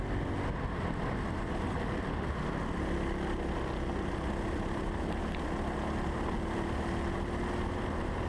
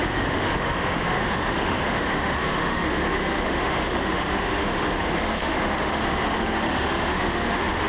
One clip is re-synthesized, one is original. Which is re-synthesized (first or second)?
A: second